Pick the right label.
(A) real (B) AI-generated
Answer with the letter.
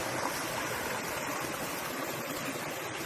A